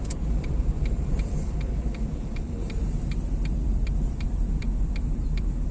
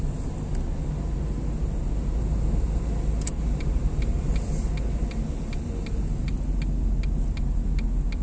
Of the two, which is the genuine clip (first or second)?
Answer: second